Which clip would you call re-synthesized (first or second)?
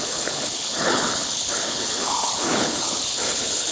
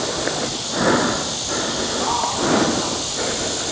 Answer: first